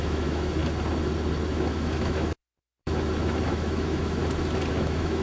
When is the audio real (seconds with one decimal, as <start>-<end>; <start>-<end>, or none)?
0.6-1.5; 4.2-4.7